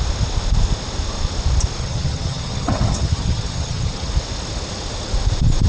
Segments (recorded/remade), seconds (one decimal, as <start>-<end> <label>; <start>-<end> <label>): 0.0-1.8 recorded; 1.8-4.1 remade; 4.1-5.7 recorded